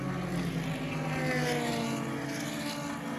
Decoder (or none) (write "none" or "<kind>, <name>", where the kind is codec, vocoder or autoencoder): none